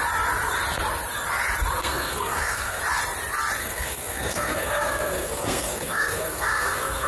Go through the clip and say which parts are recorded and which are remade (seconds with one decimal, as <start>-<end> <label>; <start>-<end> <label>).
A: 0.0-1.8 recorded; 1.8-2.8 remade; 2.8-3.6 recorded; 3.6-7.1 remade